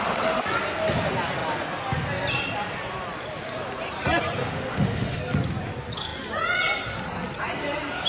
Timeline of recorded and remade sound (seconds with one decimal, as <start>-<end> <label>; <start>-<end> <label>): 0.0-4.4 recorded; 4.4-5.2 remade; 5.2-8.1 recorded